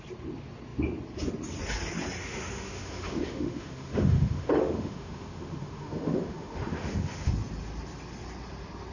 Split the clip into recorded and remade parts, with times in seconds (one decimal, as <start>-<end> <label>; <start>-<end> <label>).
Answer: 0.0-2.2 recorded; 2.2-7.3 remade; 7.3-8.9 recorded